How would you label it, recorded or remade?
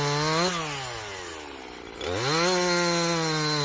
recorded